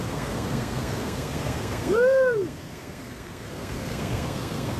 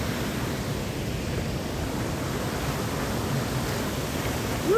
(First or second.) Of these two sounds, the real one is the second